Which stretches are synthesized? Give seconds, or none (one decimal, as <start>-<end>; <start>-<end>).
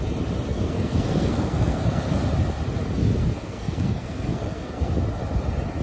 0.5-2.2; 3.2-4.9